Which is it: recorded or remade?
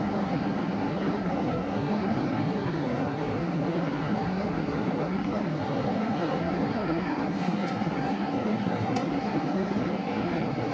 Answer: remade